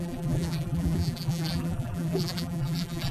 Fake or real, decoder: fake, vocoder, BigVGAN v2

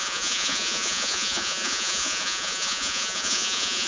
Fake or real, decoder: fake, vocoder, Vocos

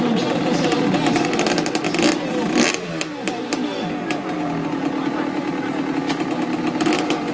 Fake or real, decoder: real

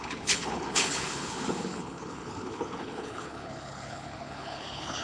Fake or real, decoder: fake, codec, HILCodec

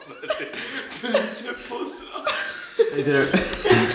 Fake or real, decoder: real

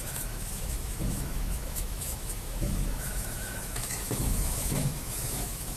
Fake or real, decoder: fake, autoencoder, DAC-VAE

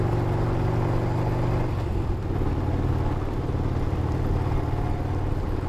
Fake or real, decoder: real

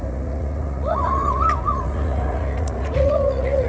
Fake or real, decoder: fake, vocoder, Vocos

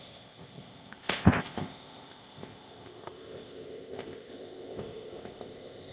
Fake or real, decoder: fake, codec, ZipCodec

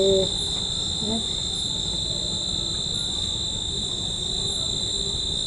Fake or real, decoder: real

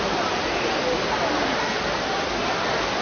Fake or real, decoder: real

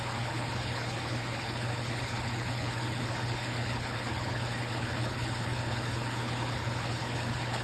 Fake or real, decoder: fake, codec, HILCodec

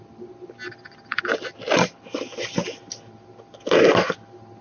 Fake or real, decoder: real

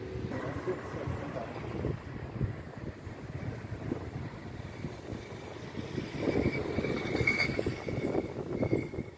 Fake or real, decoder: real